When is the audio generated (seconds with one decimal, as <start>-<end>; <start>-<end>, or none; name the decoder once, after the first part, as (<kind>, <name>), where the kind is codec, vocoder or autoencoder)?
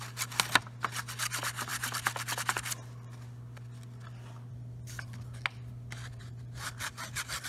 none